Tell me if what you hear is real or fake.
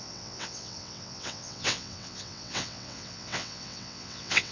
fake